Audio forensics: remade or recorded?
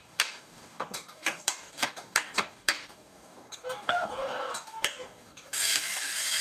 remade